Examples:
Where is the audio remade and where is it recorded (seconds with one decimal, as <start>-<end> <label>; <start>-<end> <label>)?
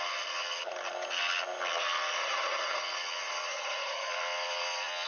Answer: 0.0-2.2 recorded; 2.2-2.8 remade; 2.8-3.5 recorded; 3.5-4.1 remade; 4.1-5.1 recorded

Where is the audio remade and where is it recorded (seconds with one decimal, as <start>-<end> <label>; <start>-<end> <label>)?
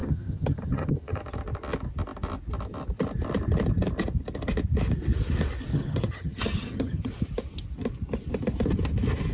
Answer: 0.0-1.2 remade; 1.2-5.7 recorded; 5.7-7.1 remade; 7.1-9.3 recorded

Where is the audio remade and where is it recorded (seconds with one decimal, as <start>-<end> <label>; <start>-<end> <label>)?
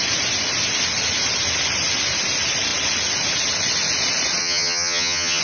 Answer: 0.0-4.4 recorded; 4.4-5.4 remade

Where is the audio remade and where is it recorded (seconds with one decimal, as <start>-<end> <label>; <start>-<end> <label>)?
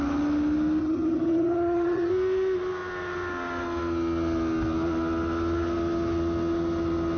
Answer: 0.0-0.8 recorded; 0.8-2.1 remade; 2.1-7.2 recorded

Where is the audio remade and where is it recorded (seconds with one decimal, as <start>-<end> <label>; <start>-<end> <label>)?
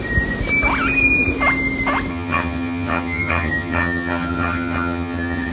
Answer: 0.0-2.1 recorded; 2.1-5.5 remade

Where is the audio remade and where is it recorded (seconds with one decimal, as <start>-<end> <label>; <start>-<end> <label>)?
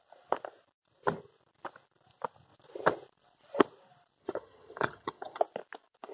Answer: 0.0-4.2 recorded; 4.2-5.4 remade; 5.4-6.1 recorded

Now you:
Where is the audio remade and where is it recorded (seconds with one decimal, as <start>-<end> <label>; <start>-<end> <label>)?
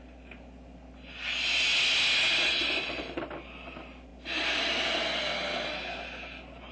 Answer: 0.0-6.7 recorded